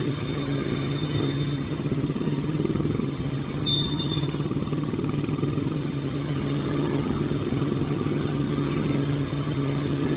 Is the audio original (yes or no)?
no